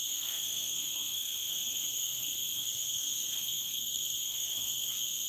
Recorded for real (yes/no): no